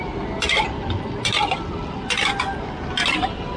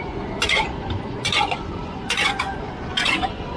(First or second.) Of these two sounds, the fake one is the second